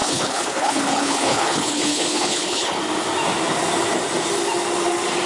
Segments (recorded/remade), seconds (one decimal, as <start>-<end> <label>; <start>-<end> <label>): 0.0-2.8 remade; 2.8-5.3 recorded